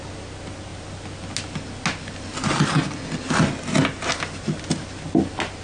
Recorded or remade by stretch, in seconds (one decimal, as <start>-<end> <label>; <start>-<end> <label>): 0.0-5.6 recorded